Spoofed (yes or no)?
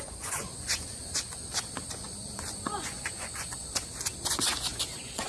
yes